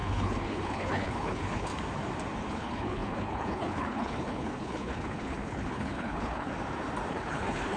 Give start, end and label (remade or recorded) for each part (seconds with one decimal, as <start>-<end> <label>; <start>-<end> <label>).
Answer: 0.0-1.7 remade; 1.7-2.5 recorded; 2.5-6.5 remade; 6.5-7.1 recorded; 7.1-7.8 remade